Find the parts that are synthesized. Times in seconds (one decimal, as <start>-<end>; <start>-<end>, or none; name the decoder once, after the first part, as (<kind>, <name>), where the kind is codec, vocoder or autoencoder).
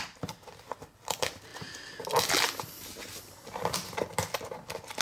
none